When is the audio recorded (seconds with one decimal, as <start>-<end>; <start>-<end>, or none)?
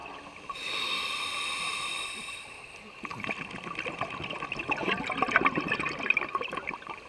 0.0-2.1